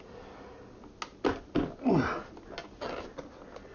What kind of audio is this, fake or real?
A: real